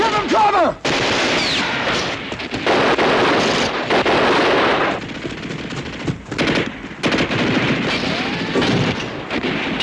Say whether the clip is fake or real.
real